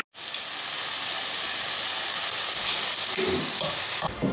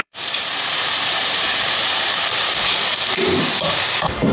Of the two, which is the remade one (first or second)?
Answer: second